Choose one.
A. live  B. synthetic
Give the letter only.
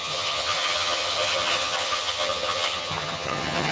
B